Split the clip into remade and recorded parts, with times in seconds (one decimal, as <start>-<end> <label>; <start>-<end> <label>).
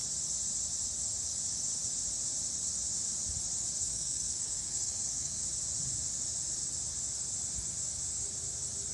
0.0-3.8 recorded; 3.8-5.4 remade; 5.4-8.9 recorded